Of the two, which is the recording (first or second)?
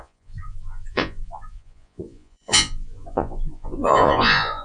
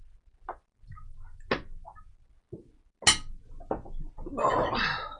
second